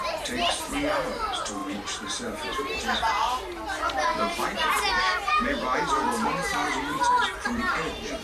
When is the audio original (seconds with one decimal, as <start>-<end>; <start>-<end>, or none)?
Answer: 0.0-1.6; 2.8-6.5; 7.0-8.2